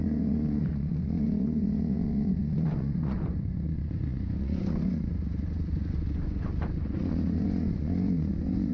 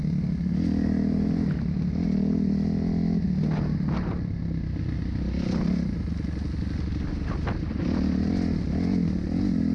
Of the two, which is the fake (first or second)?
first